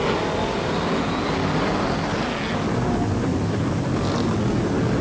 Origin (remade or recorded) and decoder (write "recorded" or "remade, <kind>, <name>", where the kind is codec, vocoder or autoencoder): recorded